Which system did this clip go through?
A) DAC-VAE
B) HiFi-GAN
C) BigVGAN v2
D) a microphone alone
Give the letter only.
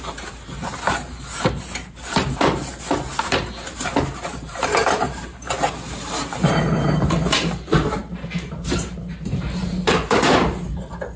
C